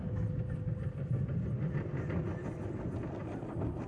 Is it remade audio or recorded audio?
recorded